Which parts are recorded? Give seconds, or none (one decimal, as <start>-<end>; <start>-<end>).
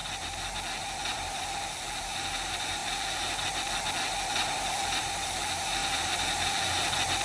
0.0-7.2